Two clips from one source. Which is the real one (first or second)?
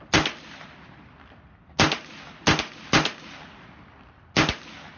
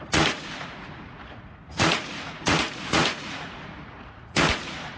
first